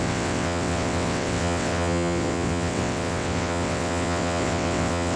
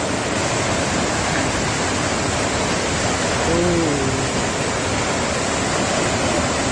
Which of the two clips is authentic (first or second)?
second